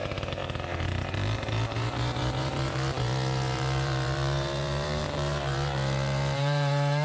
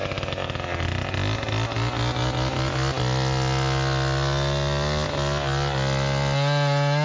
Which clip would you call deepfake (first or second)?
first